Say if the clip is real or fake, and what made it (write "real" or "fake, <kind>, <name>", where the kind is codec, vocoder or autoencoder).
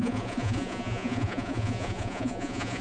fake, vocoder, Vocos